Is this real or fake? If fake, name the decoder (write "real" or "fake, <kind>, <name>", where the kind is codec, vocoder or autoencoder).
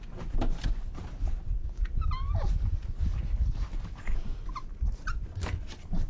real